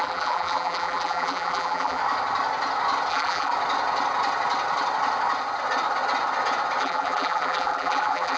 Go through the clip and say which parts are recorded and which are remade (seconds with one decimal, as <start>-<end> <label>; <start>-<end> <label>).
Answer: 0.0-2.0 remade; 2.0-3.1 recorded; 3.1-3.5 remade; 3.5-6.8 recorded; 6.8-8.4 remade